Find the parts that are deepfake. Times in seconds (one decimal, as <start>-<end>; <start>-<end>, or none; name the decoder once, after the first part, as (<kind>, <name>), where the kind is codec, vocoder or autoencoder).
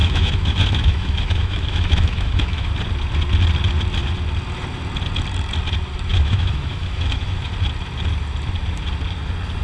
0.0-2.7 (autoencoder, DAC-VAE); 6.1-7.5